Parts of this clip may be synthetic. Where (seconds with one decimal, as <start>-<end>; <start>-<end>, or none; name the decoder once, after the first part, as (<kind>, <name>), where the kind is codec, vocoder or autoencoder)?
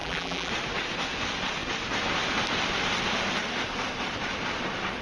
0.0-0.5 (vocoder, BigVGAN v2)